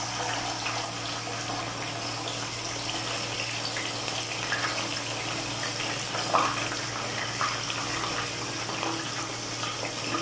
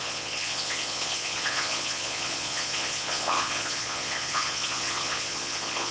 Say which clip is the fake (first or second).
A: second